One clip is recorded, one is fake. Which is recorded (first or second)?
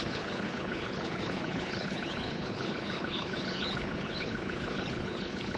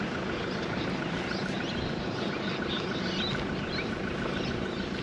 second